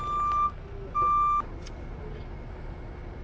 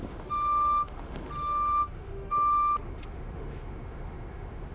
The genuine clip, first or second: first